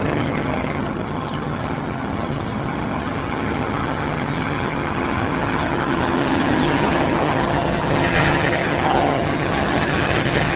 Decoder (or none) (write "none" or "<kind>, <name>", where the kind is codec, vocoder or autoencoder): vocoder, HiFi-GAN